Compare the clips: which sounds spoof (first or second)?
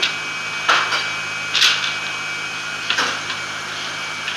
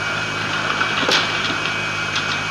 second